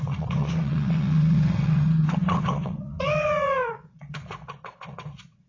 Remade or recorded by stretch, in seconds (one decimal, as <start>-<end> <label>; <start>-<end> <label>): 0.0-5.5 remade